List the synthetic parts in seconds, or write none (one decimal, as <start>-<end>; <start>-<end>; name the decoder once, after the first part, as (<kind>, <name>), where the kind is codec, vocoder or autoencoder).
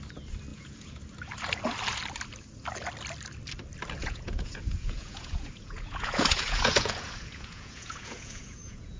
0.5-1.0 (vocoder, Vocos); 4.0-9.0